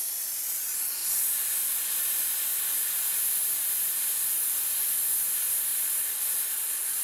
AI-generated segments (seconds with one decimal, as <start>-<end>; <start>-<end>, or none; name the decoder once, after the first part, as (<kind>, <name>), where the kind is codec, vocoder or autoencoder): 1.0-3.6 (vocoder, BigVGAN v2); 5.7-7.0